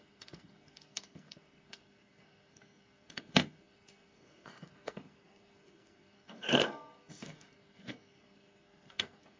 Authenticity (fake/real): fake